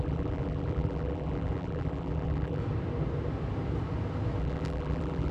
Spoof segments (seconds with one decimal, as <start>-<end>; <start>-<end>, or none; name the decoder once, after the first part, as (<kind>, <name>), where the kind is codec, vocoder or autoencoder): 0.0-2.6 (vocoder, BigVGAN v2); 4.4-5.3